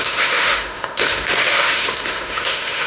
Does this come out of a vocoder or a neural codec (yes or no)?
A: yes